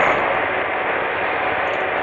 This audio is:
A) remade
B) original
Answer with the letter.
B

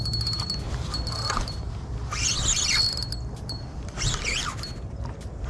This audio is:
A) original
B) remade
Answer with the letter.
A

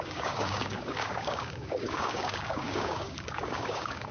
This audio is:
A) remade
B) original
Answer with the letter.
A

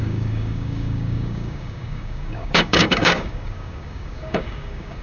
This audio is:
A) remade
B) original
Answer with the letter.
A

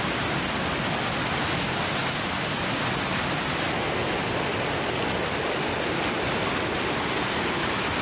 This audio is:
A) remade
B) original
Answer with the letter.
B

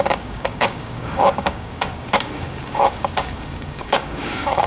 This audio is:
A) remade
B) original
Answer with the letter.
A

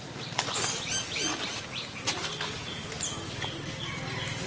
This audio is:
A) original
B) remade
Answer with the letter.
A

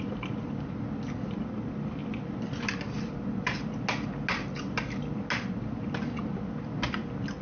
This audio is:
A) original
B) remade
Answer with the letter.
A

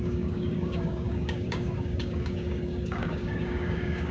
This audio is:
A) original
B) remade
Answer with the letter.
B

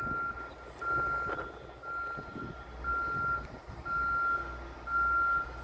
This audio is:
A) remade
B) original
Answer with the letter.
B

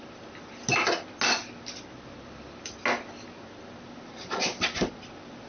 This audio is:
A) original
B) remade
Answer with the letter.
A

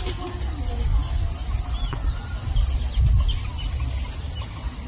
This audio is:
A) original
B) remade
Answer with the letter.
A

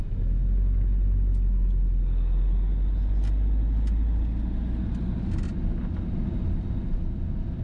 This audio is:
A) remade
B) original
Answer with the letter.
B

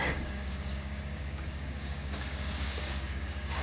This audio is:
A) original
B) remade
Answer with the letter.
B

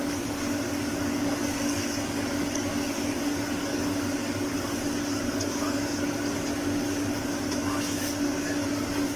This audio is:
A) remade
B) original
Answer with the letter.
A